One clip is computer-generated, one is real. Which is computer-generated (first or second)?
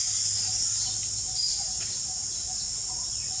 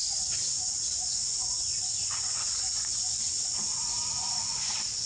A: second